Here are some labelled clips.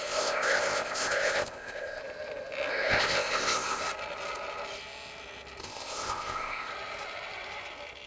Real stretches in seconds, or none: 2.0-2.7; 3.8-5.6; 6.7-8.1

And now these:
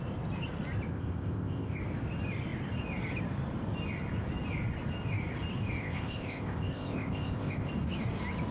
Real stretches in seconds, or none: 0.0-0.9; 1.8-5.8; 7.7-8.5

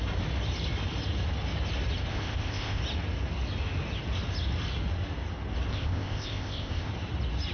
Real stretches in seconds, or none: 0.0-2.1; 2.8-5.7; 6.9-7.5

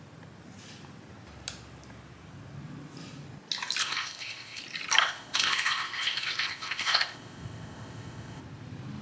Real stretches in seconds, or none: 0.0-3.8; 4.6-5.0; 8.4-9.0

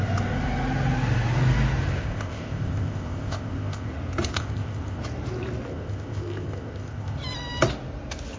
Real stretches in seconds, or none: 0.0-2.0; 3.9-4.3; 5.0-5.7; 7.2-8.4

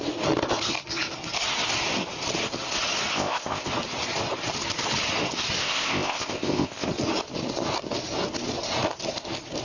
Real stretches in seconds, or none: 0.0-3.1; 3.7-5.6; 6.9-9.6